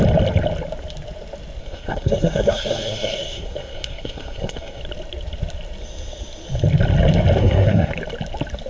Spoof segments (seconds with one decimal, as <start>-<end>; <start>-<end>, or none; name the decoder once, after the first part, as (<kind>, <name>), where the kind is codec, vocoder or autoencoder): 1.6-4.8 (codec, SNAC); 7.4-7.9